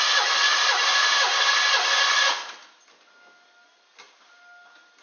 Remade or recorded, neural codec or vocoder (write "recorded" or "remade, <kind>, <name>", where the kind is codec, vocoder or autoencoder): recorded